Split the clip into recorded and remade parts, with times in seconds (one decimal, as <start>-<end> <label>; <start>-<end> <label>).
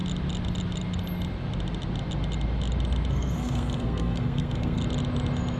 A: 0.0-3.1 recorded; 3.1-4.8 remade; 4.8-5.6 recorded